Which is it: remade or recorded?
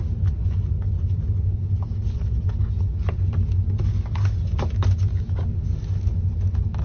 recorded